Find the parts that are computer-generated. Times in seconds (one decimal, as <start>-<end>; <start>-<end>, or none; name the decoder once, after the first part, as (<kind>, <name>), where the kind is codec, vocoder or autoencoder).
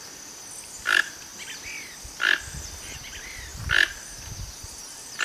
none